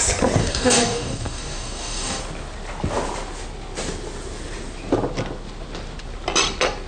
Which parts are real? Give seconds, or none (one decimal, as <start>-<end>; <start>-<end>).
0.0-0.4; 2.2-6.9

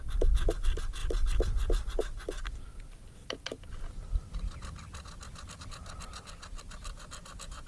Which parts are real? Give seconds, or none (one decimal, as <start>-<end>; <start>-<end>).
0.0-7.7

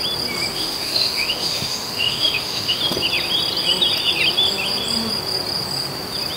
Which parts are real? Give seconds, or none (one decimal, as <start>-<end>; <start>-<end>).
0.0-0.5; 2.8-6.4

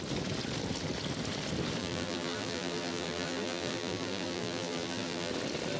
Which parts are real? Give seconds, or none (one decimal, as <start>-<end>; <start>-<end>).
0.0-1.8; 5.3-5.8

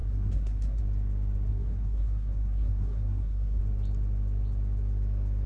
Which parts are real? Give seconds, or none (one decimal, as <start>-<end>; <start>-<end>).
0.8-1.5; 3.6-5.5

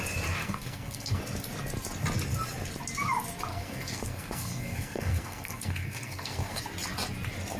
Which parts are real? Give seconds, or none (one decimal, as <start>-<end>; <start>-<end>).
0.0-0.4; 1.2-3.5; 6.6-7.6